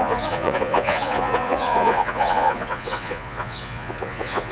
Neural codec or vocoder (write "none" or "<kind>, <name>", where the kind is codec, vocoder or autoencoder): vocoder, Vocos